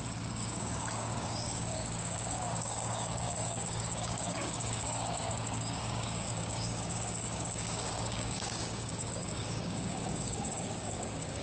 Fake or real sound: fake